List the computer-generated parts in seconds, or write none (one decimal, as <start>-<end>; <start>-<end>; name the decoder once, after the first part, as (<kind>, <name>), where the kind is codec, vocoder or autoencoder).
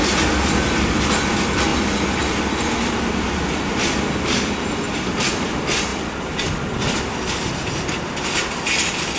none